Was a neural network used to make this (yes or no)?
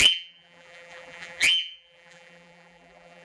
yes